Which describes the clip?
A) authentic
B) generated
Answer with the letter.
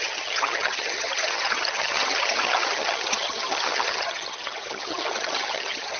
B